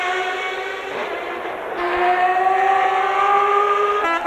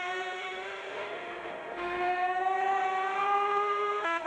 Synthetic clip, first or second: second